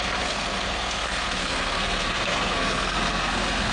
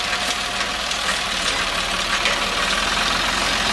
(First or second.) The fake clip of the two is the first